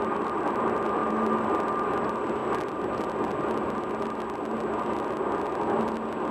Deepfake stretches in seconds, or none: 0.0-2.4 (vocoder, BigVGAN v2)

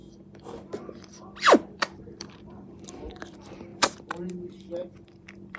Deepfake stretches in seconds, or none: 0.0-5.6 (vocoder, BigVGAN v2)